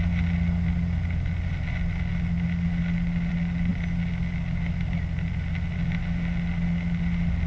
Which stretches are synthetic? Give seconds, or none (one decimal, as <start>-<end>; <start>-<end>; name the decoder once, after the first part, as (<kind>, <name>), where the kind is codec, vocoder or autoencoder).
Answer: none